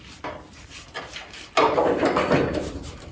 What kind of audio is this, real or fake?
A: real